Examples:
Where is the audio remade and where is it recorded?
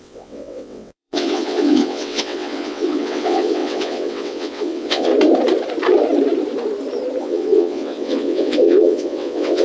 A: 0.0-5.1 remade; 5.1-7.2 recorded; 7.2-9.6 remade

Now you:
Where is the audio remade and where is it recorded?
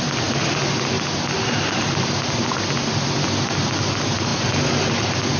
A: 0.0-5.4 recorded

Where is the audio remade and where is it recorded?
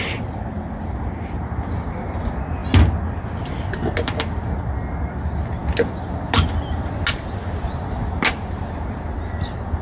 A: 0.0-9.8 recorded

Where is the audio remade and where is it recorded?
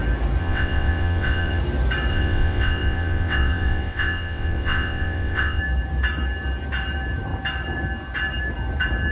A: 0.0-0.4 recorded; 0.4-1.6 remade; 1.6-2.1 recorded; 2.1-5.6 remade; 5.6-9.1 recorded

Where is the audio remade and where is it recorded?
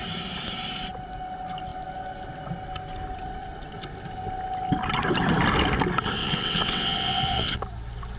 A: 0.0-6.2 recorded; 6.2-7.6 remade; 7.6-8.2 recorded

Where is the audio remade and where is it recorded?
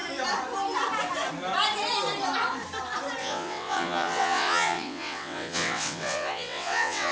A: 0.0-3.2 recorded; 3.2-7.1 remade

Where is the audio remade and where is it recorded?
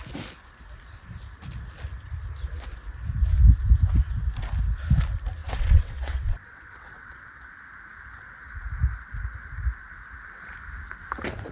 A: 0.0-5.4 recorded; 5.4-7.5 remade; 7.5-11.5 recorded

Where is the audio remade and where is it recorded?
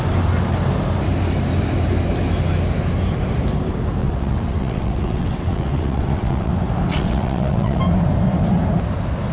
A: 0.0-4.0 recorded; 4.0-6.5 remade; 6.5-6.9 recorded; 6.9-7.8 remade; 7.8-9.3 recorded